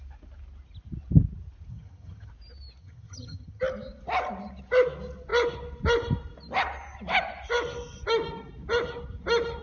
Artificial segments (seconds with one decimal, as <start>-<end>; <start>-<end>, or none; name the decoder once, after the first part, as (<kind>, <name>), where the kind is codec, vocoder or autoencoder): 1.7-2.3 (vocoder, HiFi-GAN); 2.8-3.6